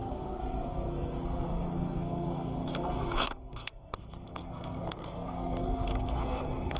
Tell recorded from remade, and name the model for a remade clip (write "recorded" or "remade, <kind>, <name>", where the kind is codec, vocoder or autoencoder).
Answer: remade, codec, SNAC